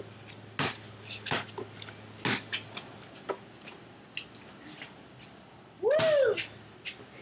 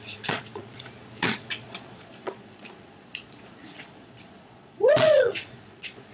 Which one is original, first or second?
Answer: first